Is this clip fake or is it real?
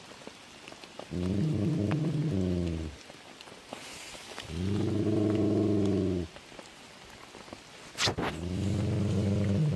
fake